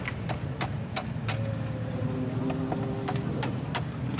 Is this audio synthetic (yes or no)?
no